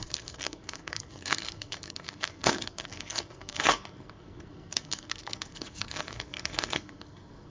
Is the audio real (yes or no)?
no